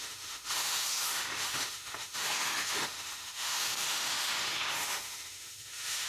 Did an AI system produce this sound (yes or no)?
yes